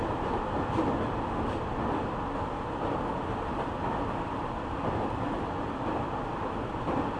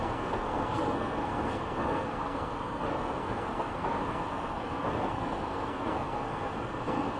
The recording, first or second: first